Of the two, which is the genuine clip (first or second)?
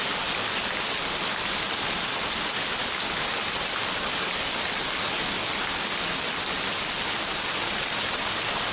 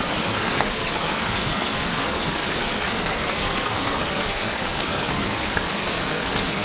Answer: first